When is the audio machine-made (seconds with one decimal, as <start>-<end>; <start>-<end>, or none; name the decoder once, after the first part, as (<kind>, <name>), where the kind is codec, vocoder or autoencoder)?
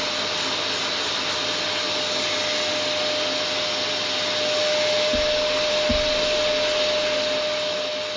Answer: none